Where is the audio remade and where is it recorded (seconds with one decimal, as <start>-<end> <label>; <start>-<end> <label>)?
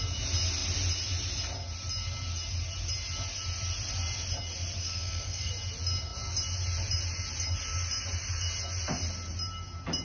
0.0-4.8 recorded; 4.8-5.5 remade; 5.5-10.0 recorded